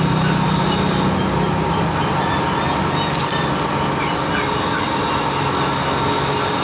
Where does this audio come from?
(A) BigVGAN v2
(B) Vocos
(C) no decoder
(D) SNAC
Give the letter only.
C